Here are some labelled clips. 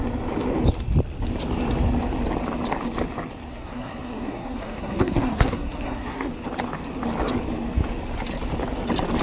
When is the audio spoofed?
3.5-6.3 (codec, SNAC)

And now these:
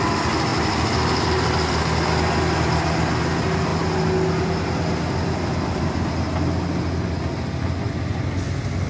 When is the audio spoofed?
none

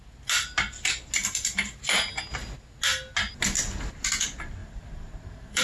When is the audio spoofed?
1.2-1.8 (vocoder, BigVGAN v2); 4.6-5.6

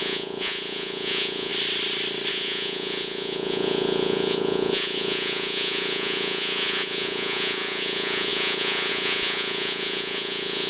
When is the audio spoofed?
0.0-1.5 (vocoder, Vocos); 2.3-10.7